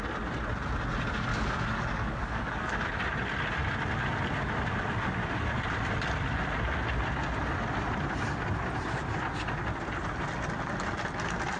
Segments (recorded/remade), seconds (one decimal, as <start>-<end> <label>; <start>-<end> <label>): 0.0-1.3 recorded; 1.3-2.9 remade; 2.9-11.6 recorded